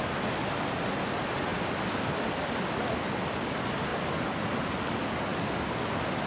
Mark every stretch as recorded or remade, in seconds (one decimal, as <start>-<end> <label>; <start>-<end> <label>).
0.0-1.5 recorded; 1.5-3.4 remade; 3.4-3.9 recorded; 3.9-4.6 remade; 4.6-6.3 recorded